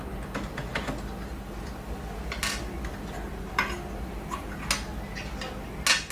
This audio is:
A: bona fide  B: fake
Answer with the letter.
A